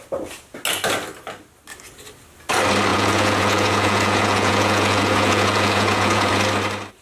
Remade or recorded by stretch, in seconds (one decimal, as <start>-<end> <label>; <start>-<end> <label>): 0.0-2.9 recorded; 2.9-6.3 remade; 6.3-7.0 recorded